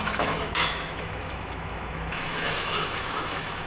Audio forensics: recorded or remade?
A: remade